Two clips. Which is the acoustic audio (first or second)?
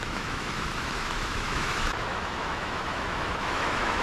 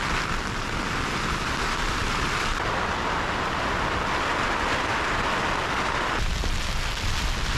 second